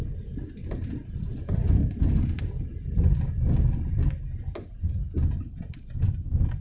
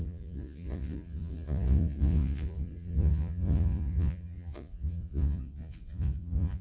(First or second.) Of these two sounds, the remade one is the second